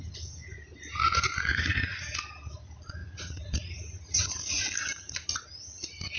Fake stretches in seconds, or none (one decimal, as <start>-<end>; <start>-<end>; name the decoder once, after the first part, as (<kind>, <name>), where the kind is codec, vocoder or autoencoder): 1.5-2.1 (vocoder, Vocos); 3.0-4.6